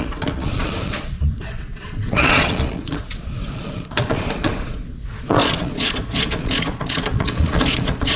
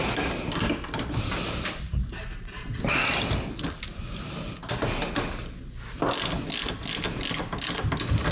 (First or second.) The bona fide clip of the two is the second